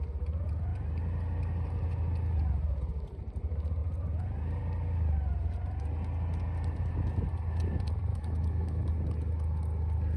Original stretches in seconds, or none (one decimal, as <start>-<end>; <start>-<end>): 0.0-8.1; 8.8-10.2